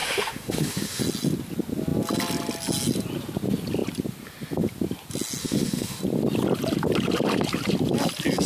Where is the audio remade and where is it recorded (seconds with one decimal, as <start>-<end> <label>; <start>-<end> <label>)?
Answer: 0.0-1.0 remade; 1.0-5.4 recorded; 5.4-6.0 remade; 6.0-8.5 recorded